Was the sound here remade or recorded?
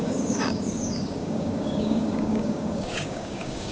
remade